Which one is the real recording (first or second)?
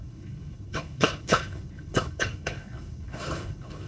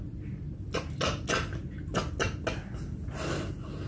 second